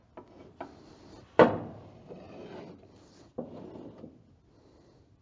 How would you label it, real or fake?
real